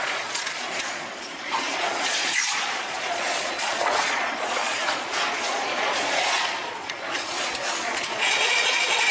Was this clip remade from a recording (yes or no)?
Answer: yes